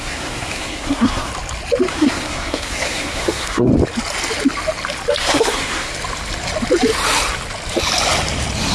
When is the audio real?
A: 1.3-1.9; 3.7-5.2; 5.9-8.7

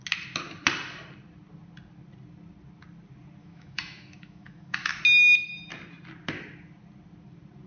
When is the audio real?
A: 0.0-3.4; 4.9-7.7

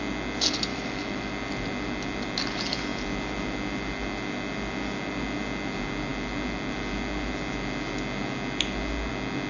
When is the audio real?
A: 0.0-0.7; 1.3-9.5

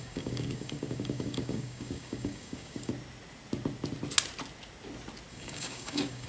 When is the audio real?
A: 2.9-5.3

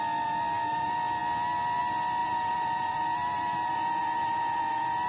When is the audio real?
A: 0.0-2.2; 4.6-5.1

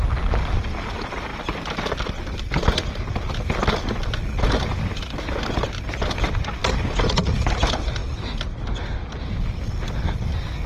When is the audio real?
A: 0.0-10.7

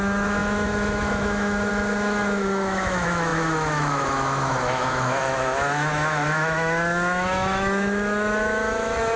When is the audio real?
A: none

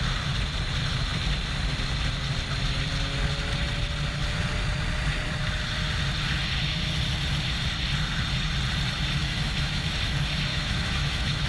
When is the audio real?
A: 0.0-9.2; 9.9-10.5